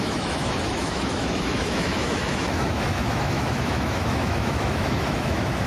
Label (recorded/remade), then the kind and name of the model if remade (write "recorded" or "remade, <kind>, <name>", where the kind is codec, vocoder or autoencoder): remade, autoencoder, DAC-VAE